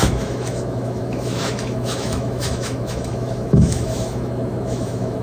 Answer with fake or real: fake